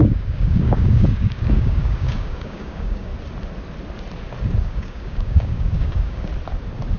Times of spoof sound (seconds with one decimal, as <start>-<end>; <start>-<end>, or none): 0.0-3.1; 4.6-6.3